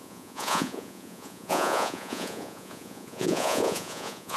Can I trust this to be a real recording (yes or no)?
no